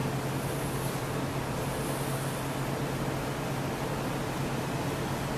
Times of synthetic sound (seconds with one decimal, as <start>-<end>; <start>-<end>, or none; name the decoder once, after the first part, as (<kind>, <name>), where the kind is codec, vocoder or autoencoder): none

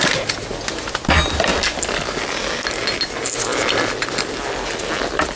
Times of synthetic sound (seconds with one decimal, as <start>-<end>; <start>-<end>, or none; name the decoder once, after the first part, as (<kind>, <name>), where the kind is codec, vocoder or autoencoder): none

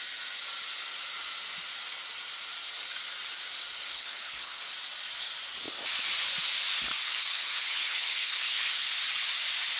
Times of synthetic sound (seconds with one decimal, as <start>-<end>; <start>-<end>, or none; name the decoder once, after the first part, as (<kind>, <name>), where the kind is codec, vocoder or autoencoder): 3.9-4.6 (codec, HILCodec); 7.0-8.9